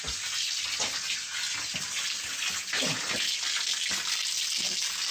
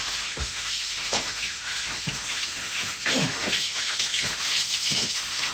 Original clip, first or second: first